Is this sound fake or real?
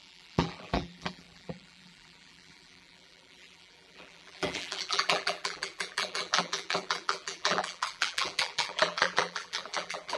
fake